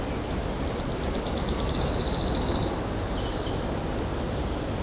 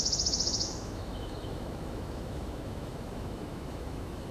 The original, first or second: first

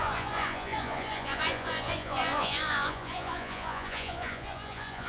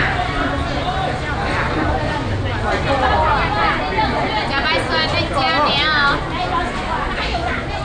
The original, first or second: second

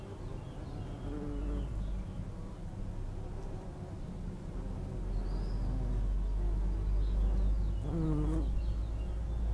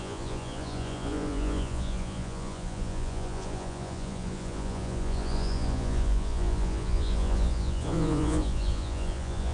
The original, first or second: first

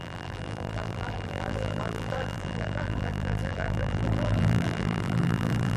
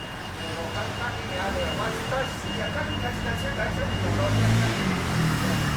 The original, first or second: second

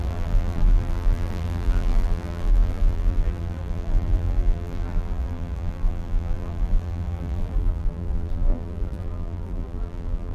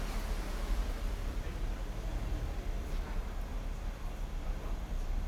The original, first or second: second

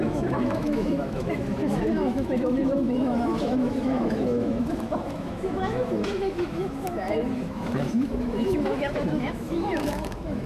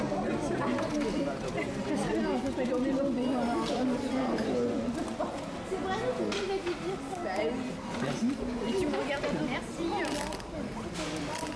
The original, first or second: second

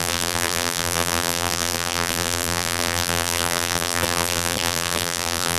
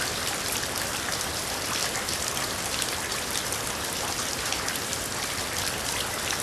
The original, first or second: second